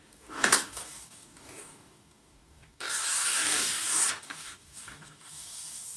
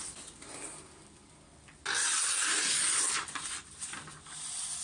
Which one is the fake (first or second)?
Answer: first